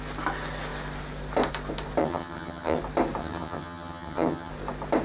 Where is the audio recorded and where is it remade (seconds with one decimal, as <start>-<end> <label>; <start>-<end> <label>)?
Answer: 0.0-2.0 recorded; 2.0-2.8 remade; 2.8-3.2 recorded; 3.2-4.5 remade; 4.5-5.0 recorded